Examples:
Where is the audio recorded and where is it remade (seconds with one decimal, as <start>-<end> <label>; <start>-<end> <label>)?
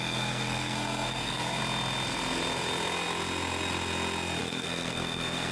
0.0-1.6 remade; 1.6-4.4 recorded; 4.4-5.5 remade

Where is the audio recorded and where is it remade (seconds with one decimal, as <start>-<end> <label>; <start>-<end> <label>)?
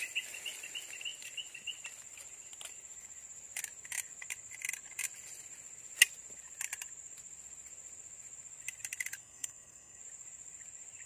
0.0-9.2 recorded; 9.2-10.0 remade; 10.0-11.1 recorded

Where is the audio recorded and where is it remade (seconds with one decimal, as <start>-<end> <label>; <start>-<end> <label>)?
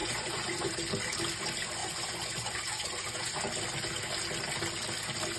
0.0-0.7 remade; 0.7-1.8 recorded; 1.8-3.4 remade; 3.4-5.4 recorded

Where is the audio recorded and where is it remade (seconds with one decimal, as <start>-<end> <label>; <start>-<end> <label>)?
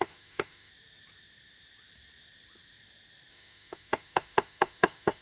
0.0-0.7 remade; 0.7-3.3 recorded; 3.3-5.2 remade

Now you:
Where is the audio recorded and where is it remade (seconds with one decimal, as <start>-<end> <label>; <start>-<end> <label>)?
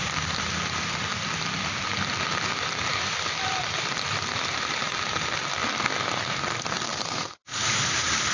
0.0-6.9 recorded; 6.9-8.3 remade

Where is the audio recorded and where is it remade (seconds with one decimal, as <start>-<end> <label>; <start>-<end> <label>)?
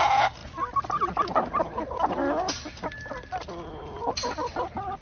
0.0-5.0 recorded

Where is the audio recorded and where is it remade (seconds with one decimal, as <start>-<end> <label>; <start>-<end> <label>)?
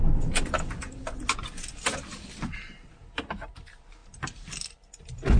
0.0-5.4 recorded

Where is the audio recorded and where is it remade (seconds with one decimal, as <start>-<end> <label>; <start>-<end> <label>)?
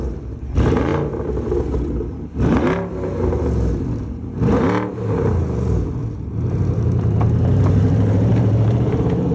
0.0-0.9 remade; 0.9-4.9 recorded; 4.9-6.0 remade; 6.0-6.6 recorded; 6.6-9.3 remade